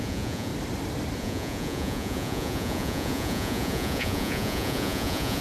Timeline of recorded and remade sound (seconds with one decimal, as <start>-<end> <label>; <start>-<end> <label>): 0.0-0.5 remade; 0.5-1.2 recorded; 1.2-5.4 remade